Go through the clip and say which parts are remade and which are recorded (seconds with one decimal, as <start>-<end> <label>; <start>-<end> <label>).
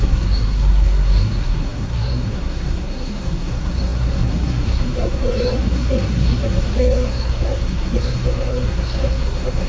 0.0-9.7 remade